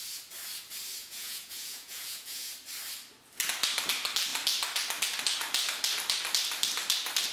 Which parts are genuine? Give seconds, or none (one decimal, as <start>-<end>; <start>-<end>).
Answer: 0.0-1.0; 2.5-7.3

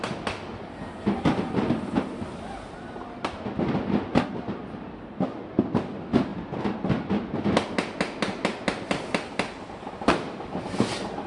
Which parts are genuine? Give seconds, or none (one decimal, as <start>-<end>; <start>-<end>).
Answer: 0.0-11.3